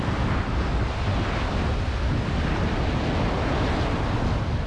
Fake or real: real